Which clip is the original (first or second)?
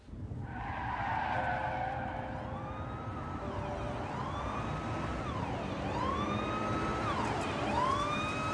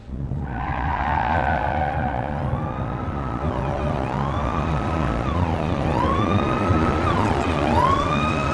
first